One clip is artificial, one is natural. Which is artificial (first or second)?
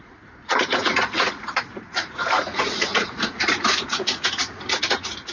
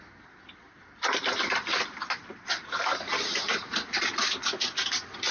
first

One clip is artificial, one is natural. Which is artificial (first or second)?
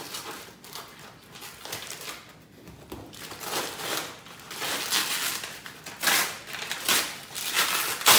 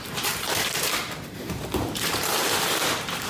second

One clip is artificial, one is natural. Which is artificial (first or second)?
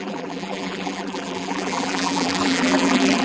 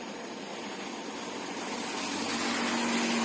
first